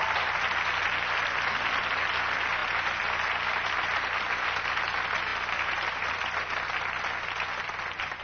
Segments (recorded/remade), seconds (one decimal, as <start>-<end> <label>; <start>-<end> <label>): 0.0-8.2 recorded